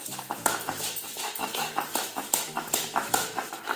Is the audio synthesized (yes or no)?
yes